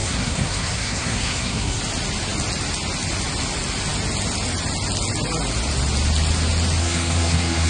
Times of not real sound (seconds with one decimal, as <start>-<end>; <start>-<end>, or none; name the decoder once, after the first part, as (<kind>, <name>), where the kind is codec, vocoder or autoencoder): 0.0-1.8 (codec, SNAC); 6.8-7.7